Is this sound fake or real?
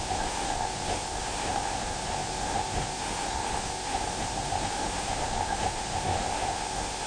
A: fake